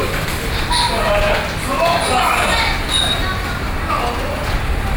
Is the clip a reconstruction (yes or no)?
no